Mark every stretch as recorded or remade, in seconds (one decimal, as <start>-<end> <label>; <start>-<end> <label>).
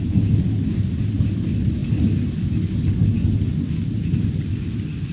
0.0-5.1 recorded